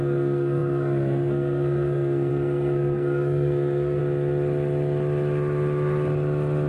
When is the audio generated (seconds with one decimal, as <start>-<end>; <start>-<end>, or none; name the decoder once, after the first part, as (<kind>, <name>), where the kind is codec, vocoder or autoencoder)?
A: 0.0-4.0 (codec, SNAC)